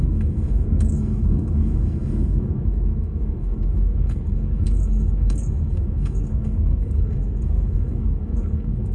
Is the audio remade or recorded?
remade